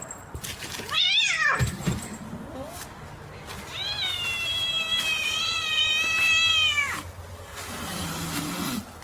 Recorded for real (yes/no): yes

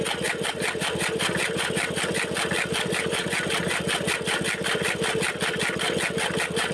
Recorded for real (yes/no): yes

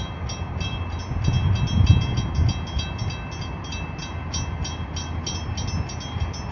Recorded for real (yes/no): yes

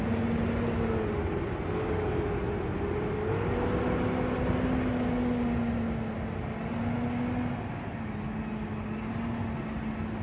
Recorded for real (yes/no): yes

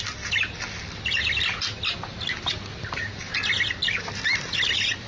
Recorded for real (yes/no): yes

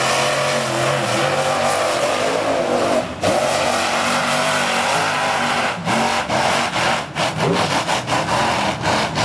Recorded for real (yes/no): yes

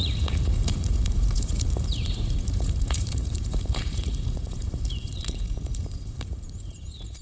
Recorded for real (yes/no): no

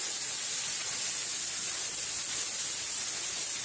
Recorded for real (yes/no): yes